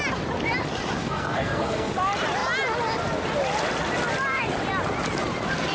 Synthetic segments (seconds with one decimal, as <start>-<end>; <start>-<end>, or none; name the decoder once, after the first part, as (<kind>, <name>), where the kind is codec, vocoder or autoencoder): 1.0-1.9 (codec, SNAC)